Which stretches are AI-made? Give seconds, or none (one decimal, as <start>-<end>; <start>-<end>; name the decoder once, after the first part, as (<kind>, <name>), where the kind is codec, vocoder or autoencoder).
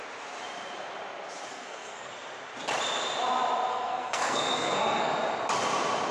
1.5-2.1 (codec, SNAC); 3.7-5.1